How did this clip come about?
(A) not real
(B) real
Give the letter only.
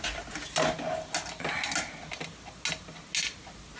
B